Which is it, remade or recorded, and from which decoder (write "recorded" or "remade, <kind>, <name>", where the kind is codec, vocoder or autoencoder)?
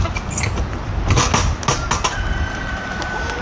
recorded